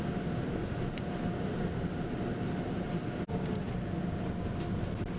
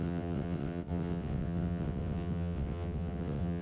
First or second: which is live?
first